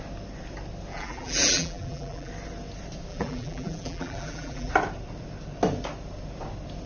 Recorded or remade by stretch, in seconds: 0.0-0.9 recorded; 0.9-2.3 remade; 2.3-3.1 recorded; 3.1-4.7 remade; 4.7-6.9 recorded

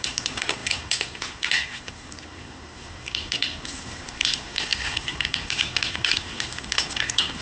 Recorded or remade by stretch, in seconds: 0.0-7.4 remade

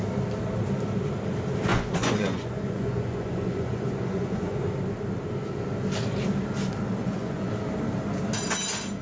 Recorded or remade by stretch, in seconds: 0.0-1.7 recorded; 1.7-4.6 remade; 4.6-7.0 recorded; 7.0-7.5 remade; 7.5-9.0 recorded

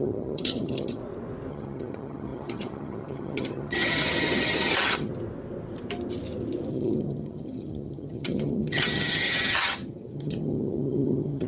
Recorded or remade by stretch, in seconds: 0.0-1.0 remade; 1.0-1.5 recorded; 1.5-5.1 remade; 5.1-6.7 recorded; 6.7-11.5 remade